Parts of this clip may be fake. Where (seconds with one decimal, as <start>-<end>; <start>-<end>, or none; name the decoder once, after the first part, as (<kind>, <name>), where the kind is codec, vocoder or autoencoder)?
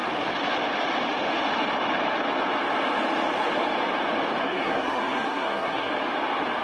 4.4-5.9 (codec, SNAC)